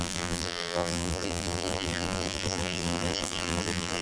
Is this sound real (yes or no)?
no